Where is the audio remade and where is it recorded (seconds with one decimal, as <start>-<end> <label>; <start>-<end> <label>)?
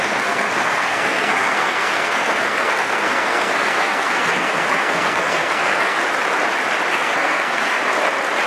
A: 0.0-6.0 remade; 6.0-6.9 recorded; 6.9-7.8 remade; 7.8-8.5 recorded